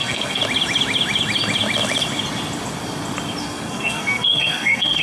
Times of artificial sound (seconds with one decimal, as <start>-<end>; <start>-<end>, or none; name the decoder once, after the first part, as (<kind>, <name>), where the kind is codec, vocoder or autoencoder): 0.0-0.4 (codec, SNAC); 3.4-5.0